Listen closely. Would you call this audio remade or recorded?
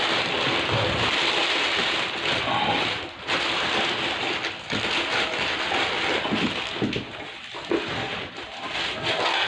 recorded